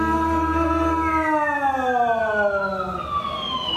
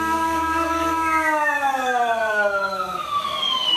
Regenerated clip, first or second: second